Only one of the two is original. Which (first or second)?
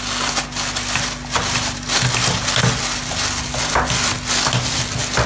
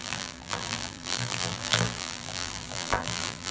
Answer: first